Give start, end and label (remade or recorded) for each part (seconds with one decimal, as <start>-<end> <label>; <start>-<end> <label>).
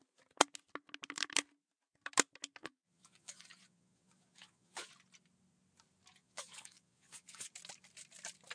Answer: 0.0-2.6 recorded; 2.6-4.9 remade; 4.9-6.2 recorded; 6.2-7.5 remade; 7.5-8.5 recorded